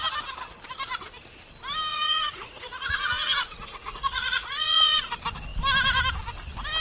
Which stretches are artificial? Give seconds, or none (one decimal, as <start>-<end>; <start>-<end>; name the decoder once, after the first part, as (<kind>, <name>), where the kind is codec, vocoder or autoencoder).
1.9-5.1 (vocoder, Vocos)